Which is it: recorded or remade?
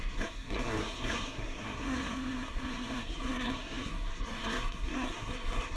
remade